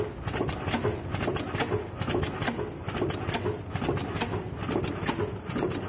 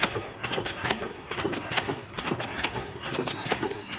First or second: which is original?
first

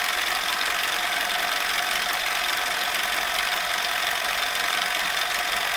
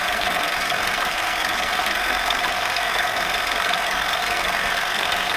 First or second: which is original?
first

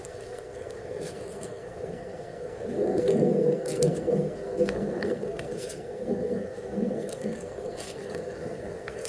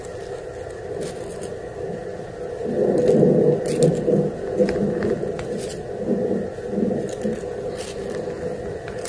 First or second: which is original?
second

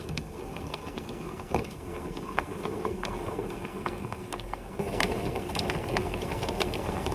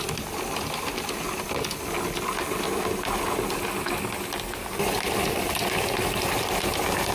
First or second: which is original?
second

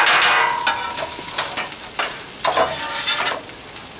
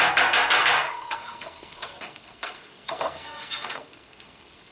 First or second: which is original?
first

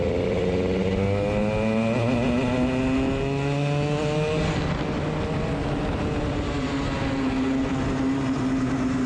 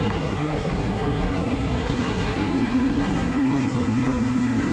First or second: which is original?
first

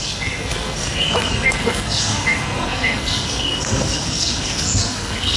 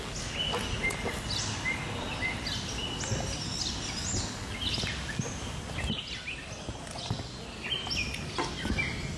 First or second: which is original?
second